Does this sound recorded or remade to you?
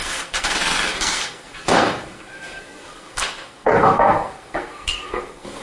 remade